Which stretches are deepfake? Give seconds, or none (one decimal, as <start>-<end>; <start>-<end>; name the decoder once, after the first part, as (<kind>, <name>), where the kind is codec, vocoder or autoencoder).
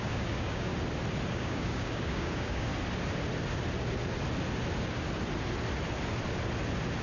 0.0-0.7 (codec, DAC); 1.3-2.7